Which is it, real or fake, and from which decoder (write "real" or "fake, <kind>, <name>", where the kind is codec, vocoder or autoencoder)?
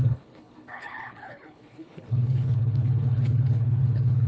fake, codec, HILCodec